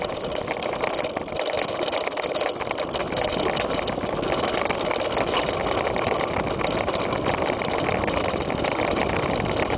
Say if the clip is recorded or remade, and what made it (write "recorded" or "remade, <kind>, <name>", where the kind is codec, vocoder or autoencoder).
recorded